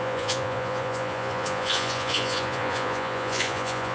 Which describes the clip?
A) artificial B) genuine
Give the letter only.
A